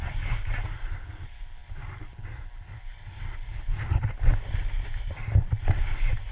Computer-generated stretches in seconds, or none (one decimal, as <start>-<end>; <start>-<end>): none